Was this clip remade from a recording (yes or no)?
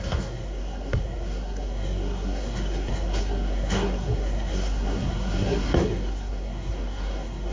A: yes